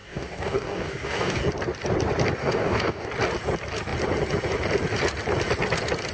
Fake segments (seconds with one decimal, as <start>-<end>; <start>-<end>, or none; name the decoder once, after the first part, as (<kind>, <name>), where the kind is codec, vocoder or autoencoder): 0.0-1.4 (codec, DAC); 2.4-3.1